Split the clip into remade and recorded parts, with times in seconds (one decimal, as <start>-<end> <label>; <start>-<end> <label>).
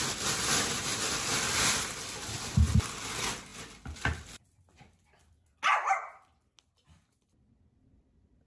0.0-0.9 recorded; 0.9-1.6 remade; 1.6-8.5 recorded